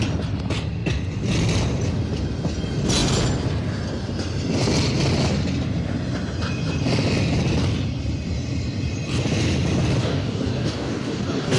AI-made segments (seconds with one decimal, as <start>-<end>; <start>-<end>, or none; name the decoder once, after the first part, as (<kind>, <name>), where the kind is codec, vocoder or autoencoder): 10.0-11.6 (codec, DAC)